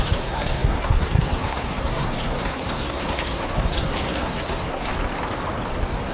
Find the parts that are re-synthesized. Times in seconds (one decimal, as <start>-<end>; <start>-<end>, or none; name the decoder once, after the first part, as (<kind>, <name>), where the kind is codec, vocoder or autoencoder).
0.0-4.9 (codec, SNAC)